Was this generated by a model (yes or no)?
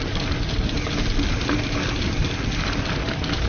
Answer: no